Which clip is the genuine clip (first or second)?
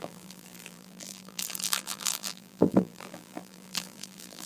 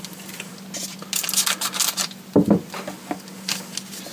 second